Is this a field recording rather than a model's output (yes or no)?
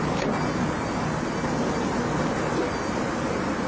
yes